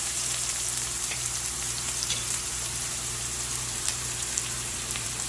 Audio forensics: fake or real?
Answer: fake